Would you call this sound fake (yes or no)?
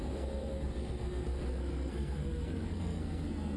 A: yes